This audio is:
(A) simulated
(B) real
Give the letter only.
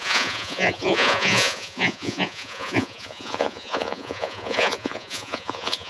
A